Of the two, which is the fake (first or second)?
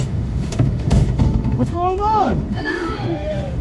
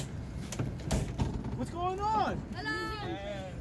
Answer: first